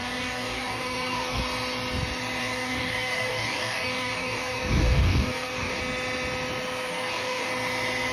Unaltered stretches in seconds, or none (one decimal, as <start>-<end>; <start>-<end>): 1.4-2.4; 5.8-6.9; 7.5-8.1